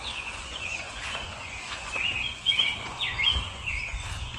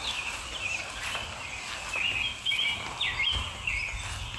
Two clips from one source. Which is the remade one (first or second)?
first